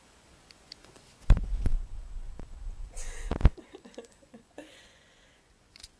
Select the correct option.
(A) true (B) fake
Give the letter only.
B